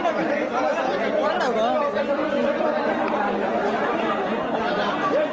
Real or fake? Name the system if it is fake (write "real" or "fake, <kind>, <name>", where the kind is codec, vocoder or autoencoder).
real